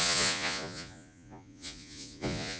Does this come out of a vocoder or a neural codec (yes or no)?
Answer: yes